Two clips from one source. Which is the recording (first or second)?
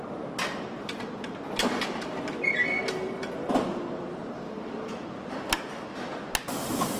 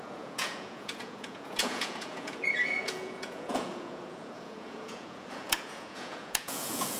first